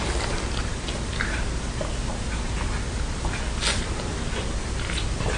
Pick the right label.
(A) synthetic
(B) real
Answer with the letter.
B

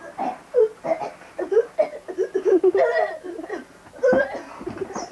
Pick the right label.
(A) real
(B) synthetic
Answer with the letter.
A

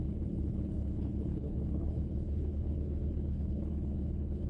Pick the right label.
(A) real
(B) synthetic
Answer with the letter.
B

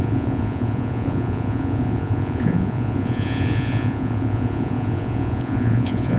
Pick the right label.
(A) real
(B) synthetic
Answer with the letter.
B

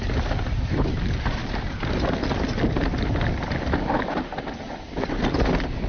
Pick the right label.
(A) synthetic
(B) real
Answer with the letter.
B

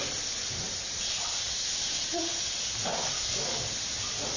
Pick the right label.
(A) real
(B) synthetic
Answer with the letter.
A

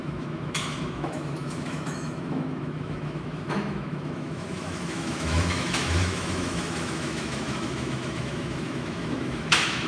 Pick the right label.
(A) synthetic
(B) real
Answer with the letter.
A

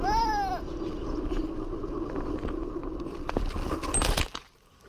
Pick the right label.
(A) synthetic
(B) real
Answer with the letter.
B